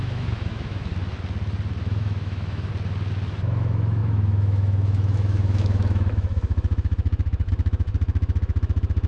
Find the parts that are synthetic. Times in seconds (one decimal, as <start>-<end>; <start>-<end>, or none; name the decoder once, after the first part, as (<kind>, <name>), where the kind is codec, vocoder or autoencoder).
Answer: 0.0-0.9 (autoencoder, DAC-VAE); 1.8-2.7; 3.3-9.1